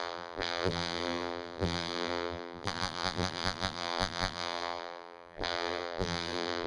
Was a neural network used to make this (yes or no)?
yes